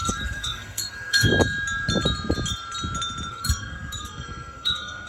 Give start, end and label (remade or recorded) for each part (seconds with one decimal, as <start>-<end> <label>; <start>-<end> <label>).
0.0-1.3 remade; 1.3-3.3 recorded; 3.3-5.1 remade